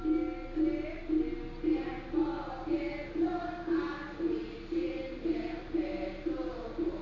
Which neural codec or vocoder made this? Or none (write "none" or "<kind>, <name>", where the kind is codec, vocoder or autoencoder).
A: none